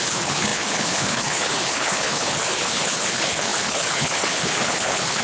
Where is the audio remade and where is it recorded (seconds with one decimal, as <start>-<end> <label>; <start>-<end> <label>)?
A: 0.0-5.2 remade